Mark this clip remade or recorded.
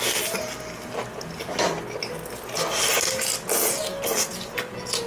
recorded